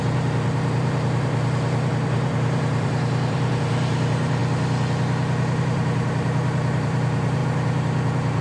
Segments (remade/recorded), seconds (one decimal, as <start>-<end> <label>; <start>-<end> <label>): 0.0-4.4 remade; 4.4-5.6 recorded; 5.6-8.4 remade